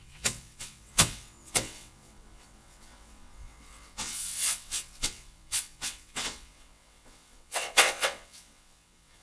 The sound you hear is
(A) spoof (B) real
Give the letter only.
A